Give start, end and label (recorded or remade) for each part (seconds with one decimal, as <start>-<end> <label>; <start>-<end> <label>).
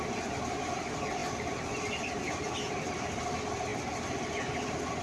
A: 0.0-1.2 recorded; 1.2-2.7 remade; 2.7-5.0 recorded